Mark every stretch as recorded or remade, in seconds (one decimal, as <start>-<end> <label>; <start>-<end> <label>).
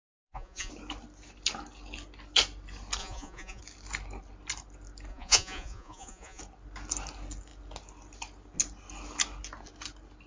0.0-0.7 remade; 0.7-3.0 recorded; 3.0-3.6 remade; 3.6-5.1 recorded; 5.1-6.4 remade; 6.4-10.3 recorded